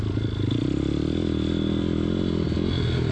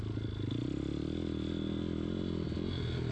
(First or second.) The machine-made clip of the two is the first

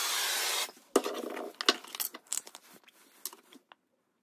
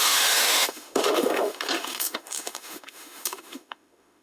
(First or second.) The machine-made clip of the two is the second